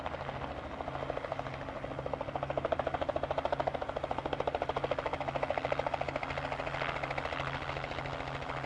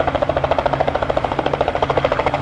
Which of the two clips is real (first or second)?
first